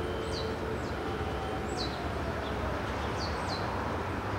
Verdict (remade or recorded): recorded